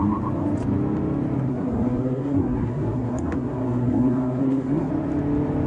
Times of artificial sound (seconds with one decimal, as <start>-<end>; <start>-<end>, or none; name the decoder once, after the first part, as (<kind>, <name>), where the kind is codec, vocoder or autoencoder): 1.5-4.9 (codec, SNAC)